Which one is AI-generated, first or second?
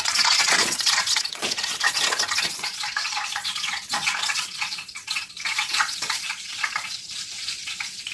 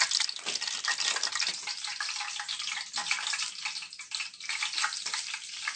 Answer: first